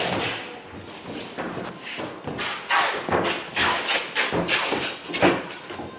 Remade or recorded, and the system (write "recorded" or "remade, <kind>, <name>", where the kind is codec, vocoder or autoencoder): recorded